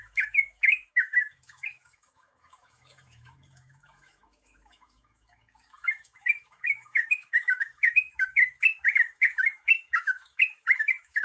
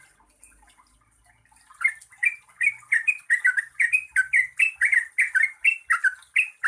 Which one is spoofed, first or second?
first